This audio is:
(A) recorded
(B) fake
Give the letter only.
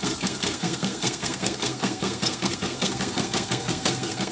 B